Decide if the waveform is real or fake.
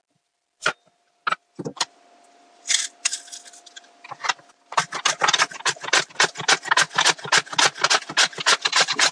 real